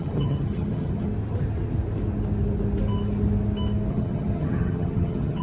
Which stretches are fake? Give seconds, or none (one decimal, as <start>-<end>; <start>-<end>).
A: 0.0-1.1; 3.9-5.4